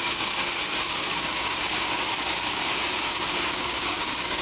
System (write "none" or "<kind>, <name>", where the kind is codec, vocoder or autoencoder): codec, DAC